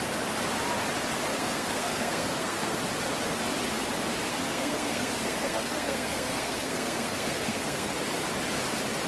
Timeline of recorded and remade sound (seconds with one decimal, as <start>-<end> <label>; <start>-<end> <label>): 0.0-1.3 recorded; 1.3-2.8 remade; 2.8-4.3 recorded; 4.3-7.9 remade; 7.9-9.1 recorded